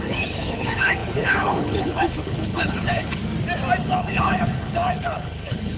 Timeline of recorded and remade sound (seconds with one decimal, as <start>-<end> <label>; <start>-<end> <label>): 0.0-3.2 remade; 3.2-3.8 recorded; 3.8-5.8 remade